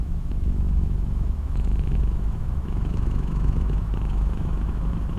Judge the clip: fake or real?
fake